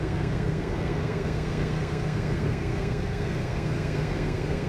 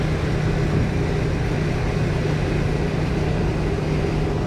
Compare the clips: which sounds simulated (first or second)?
first